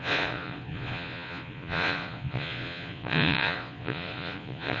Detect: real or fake fake